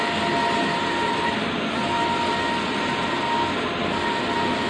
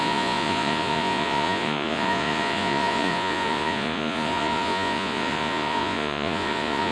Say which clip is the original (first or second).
first